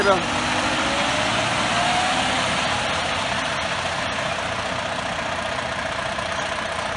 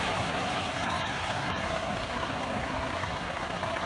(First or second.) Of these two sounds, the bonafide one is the first